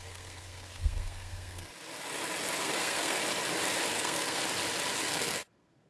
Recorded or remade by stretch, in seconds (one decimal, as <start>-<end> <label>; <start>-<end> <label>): 0.0-1.7 remade; 1.7-2.6 recorded; 2.6-3.2 remade; 3.2-3.9 recorded; 3.9-4.4 remade; 4.4-5.1 recorded; 5.1-5.9 remade